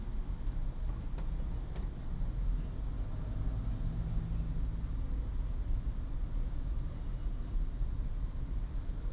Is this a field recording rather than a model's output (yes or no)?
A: yes